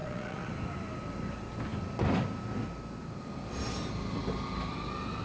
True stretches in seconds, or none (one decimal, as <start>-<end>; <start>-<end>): 0.5-5.2